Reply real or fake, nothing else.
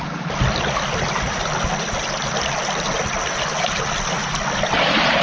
real